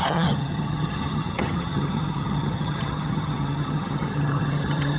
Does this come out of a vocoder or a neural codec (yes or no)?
yes